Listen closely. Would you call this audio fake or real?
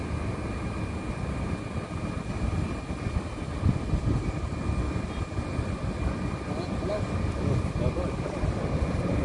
real